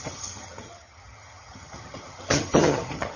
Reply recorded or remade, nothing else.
remade